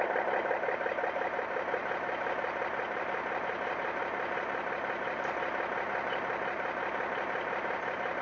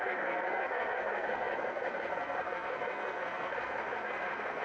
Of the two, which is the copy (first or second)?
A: second